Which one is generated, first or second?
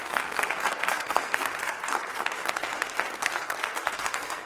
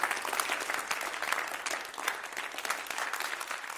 first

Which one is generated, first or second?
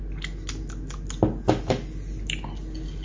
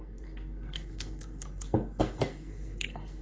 second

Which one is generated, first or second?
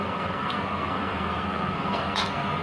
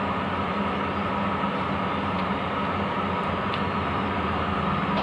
first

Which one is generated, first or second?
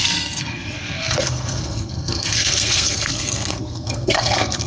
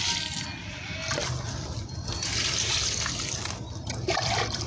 first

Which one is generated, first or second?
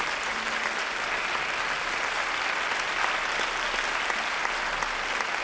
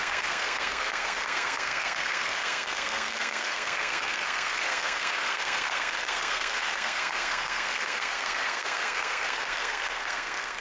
second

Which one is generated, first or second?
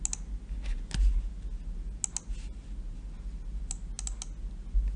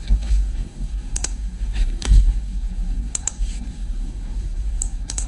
second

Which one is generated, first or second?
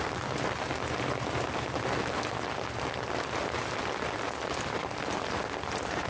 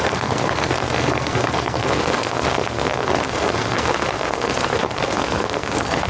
second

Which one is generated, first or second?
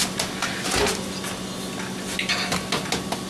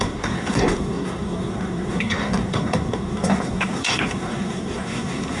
second